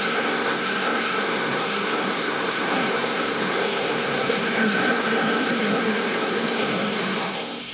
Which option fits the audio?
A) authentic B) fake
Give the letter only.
B